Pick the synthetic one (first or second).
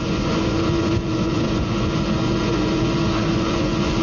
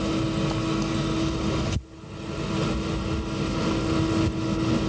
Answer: first